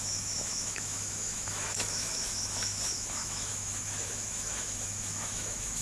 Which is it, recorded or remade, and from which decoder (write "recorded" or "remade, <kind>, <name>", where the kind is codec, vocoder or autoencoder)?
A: remade, autoencoder, DAC-VAE